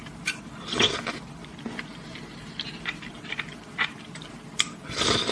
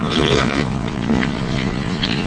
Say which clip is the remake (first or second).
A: second